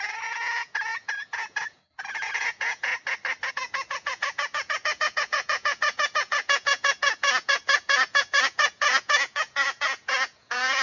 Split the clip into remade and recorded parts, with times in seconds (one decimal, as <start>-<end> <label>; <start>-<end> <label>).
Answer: 0.0-2.9 remade; 2.9-3.5 recorded; 3.5-10.8 remade